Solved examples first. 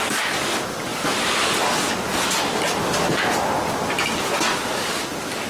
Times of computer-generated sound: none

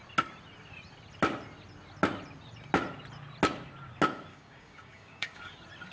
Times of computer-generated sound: 4.3-5.5 (codec, DAC)

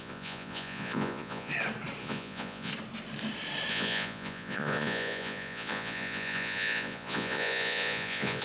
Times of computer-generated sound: 0.0-1.5 (vocoder, Vocos); 2.0-2.7; 3.7-8.4

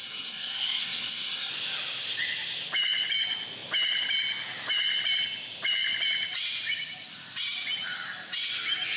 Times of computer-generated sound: 0.0-1.5 (codec, SNAC)